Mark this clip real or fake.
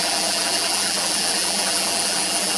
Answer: fake